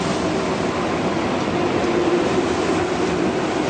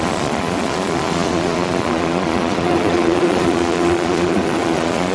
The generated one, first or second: second